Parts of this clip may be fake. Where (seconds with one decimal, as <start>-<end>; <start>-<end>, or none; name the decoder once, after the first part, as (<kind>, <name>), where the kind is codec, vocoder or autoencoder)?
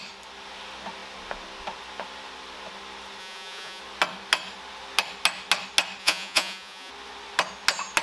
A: 3.2-3.8 (vocoder, Vocos); 6.0-6.9